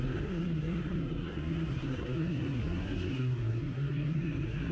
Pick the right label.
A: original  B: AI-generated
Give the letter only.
B